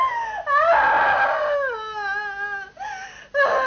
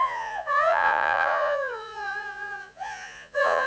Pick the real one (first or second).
first